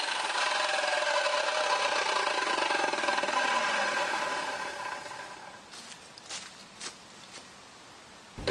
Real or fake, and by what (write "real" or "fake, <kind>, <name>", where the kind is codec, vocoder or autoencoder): fake, vocoder, BigVGAN v2